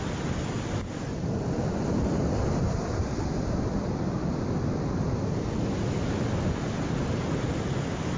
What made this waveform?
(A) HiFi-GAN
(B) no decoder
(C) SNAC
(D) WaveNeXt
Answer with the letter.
B